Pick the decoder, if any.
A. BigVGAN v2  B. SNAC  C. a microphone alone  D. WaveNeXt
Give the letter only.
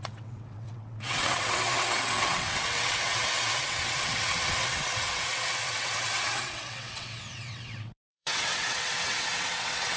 D